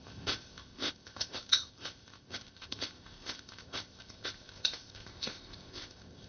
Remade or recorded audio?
remade